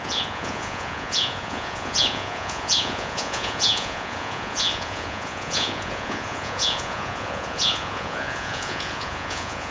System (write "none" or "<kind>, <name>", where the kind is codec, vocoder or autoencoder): vocoder, Vocos